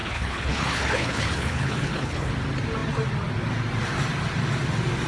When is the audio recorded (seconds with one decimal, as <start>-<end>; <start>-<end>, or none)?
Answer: 2.3-5.1